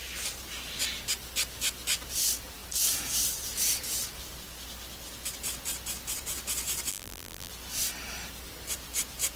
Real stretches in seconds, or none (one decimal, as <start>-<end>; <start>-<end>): 0.0-6.9; 7.5-9.4

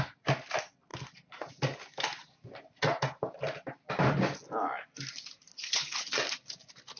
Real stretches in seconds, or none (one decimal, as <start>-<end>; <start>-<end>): 0.0-5.5; 6.1-7.0

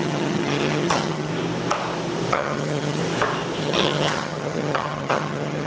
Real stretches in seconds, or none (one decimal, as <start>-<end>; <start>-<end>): 1.3-2.3; 3.0-3.6

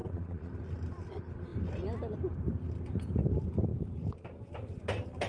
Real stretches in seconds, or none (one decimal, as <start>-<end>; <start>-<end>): 0.5-5.3

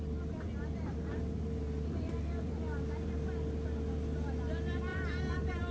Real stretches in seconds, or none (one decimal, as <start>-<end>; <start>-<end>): 0.0-4.9

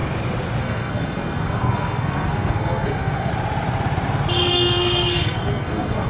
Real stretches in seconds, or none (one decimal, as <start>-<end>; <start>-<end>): 0.0-0.6; 3.3-4.4

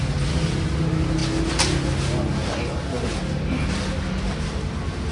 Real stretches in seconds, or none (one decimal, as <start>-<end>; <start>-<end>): 0.0-5.1